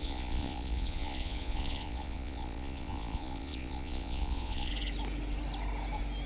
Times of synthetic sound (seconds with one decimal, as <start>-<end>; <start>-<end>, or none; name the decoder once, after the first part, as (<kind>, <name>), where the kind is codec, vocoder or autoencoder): 0.0-4.7 (vocoder, Vocos)